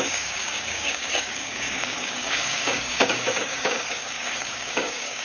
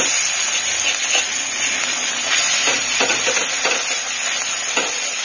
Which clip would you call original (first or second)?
second